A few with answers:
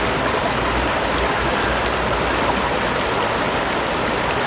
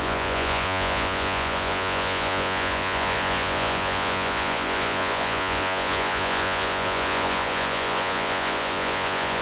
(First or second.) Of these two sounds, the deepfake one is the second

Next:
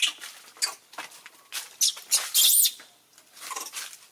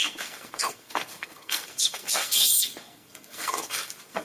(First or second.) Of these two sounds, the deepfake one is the second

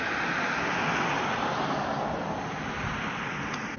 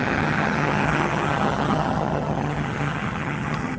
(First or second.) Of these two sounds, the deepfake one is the second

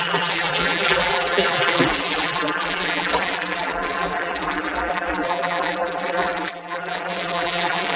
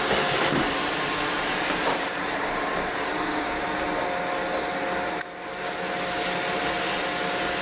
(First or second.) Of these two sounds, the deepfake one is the first